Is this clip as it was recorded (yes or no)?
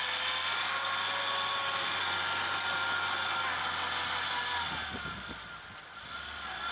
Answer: yes